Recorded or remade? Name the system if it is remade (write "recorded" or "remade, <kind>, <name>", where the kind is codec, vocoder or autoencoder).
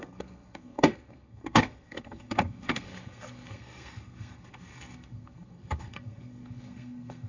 remade, codec, SNAC